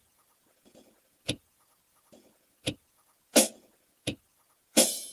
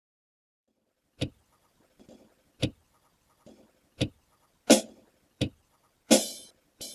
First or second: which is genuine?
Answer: second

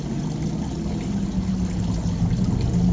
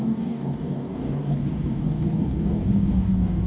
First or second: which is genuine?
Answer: first